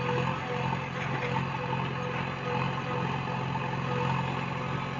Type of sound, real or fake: real